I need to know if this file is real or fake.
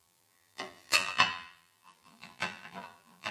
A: fake